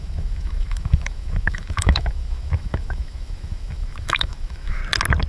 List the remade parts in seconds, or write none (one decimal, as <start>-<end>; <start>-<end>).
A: 0.0-4.8